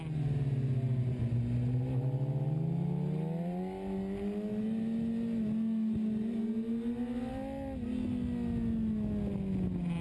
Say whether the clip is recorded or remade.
recorded